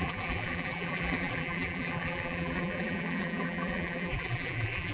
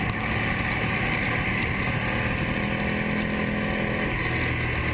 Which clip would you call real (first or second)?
second